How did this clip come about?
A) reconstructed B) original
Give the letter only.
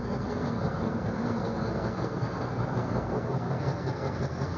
A